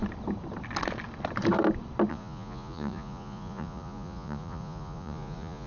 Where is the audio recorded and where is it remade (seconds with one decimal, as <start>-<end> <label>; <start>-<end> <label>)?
0.0-2.1 recorded; 2.1-5.7 remade